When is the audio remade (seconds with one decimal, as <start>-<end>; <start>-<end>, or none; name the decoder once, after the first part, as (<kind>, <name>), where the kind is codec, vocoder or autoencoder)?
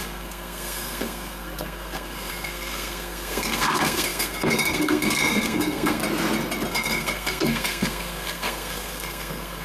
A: 0.0-6.0 (codec, SNAC); 6.7-9.6